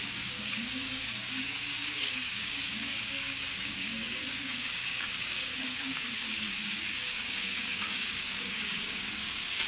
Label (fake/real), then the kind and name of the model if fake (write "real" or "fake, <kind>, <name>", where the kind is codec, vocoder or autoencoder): fake, codec, DAC